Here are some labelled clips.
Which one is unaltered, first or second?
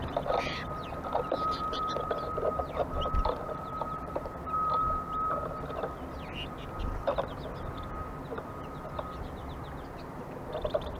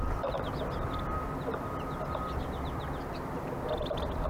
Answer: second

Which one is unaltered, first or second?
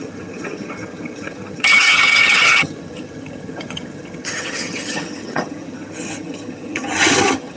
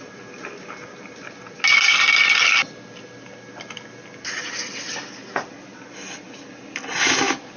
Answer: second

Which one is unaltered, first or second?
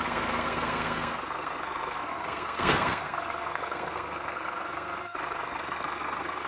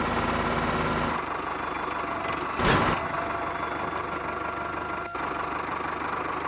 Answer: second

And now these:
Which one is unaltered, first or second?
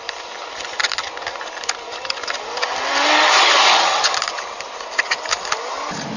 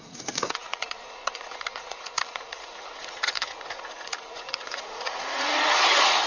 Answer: first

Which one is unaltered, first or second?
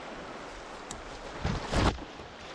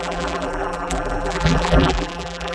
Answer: first